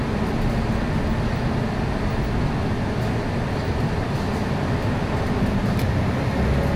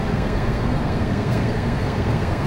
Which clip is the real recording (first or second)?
first